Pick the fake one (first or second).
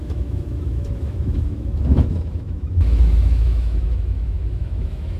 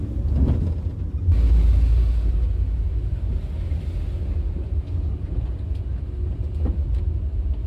first